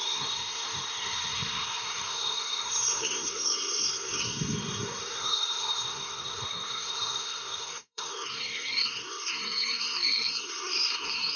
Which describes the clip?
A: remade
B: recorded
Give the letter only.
A